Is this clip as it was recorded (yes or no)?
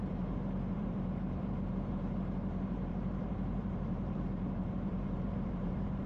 no